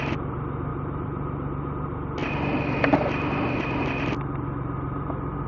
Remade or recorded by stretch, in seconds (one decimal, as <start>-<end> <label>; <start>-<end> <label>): 0.0-5.5 recorded